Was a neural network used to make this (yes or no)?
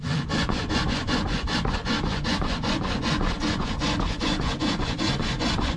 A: yes